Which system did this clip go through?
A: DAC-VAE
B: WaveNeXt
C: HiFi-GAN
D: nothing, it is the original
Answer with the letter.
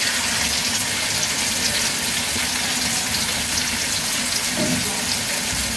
D